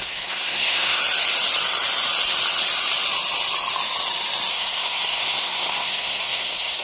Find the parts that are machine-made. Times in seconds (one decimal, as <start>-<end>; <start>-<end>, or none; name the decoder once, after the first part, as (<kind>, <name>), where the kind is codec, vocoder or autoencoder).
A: 0.0-1.0 (codec, SNAC); 4.5-6.8